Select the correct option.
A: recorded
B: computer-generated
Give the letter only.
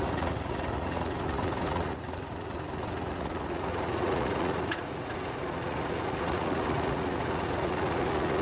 B